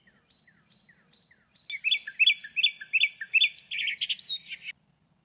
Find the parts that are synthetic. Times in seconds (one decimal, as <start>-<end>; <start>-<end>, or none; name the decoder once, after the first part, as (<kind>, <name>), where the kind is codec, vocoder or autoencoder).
none